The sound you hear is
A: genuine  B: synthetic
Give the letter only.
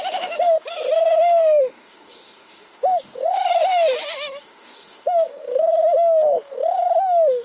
B